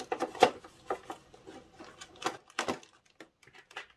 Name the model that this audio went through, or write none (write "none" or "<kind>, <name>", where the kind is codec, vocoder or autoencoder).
none